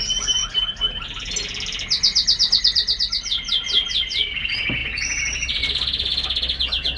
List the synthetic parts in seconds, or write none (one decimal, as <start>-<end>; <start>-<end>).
0.4-1.0; 2.4-3.5; 4.8-5.6